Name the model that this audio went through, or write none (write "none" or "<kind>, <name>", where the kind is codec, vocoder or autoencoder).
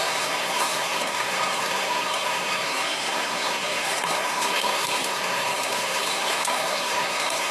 codec, SNAC